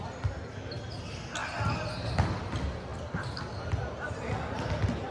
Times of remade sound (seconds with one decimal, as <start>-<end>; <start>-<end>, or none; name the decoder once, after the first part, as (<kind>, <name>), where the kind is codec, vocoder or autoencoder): none